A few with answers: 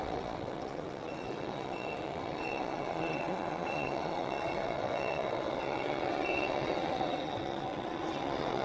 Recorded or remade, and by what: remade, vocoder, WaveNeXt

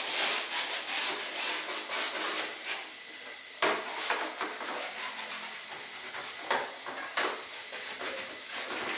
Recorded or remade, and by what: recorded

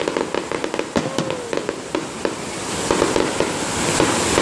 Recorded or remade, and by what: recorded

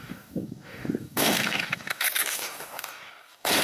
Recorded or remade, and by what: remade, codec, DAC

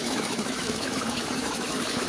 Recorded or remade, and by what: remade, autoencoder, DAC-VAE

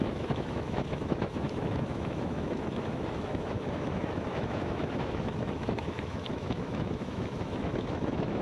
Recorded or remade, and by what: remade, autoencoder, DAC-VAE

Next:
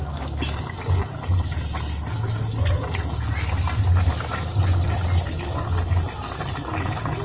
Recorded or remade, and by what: recorded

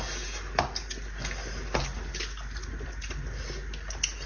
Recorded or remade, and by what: recorded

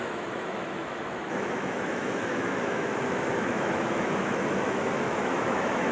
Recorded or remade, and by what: remade, autoencoder, DAC-VAE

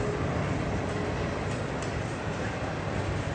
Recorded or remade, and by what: recorded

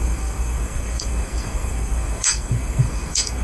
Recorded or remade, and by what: remade, codec, SNAC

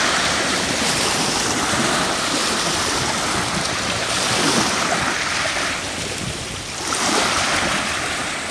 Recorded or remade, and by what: remade, vocoder, BigVGAN v2